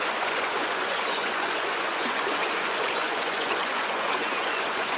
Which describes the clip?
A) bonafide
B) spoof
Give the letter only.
B